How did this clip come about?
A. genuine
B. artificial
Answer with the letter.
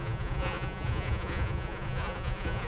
B